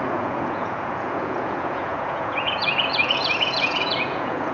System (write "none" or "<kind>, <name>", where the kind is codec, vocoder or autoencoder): vocoder, Vocos